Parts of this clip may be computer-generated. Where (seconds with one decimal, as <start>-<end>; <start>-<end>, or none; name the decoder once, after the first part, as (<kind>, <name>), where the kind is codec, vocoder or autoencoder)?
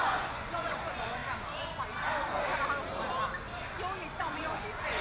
0.0-1.2 (vocoder, Vocos); 4.2-5.0